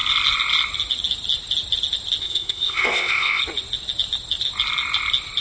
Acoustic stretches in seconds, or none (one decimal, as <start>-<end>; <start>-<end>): 0.0-2.2; 3.4-5.4